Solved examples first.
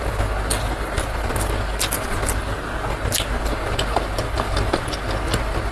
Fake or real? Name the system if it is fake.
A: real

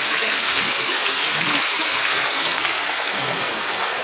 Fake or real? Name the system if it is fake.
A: fake, codec, SNAC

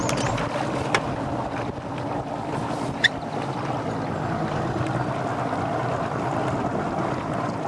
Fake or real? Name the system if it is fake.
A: real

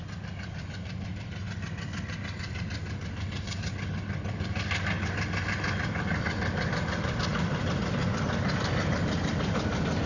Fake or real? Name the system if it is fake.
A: real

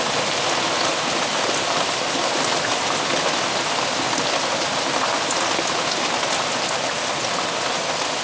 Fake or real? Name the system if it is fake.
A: real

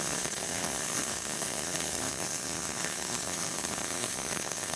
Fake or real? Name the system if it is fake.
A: fake, codec, SNAC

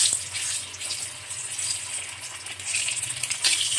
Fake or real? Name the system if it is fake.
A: fake, vocoder, Vocos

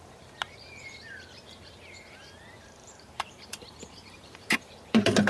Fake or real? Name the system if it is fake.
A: fake, vocoder, BigVGAN v2